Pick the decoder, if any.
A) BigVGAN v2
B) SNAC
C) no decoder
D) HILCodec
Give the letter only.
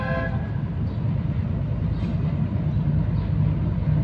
C